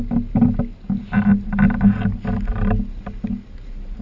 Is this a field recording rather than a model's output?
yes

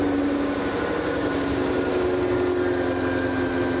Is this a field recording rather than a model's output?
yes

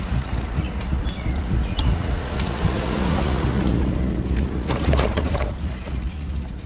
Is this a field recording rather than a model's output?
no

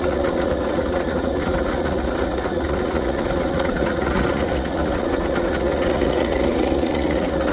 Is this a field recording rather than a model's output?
no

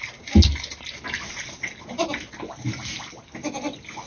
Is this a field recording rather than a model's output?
yes